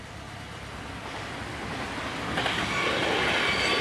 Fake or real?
real